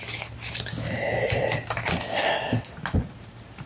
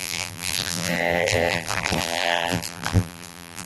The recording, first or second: first